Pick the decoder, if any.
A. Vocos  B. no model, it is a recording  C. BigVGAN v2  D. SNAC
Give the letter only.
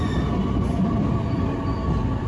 B